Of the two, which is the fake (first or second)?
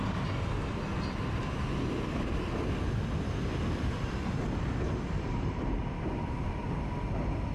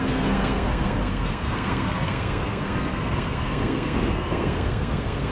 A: second